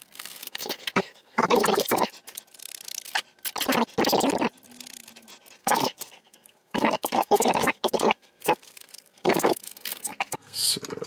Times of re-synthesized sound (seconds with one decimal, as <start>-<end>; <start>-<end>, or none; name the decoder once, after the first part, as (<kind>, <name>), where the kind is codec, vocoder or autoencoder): 0.0-2.1 (codec, SNAC); 5.6-10.7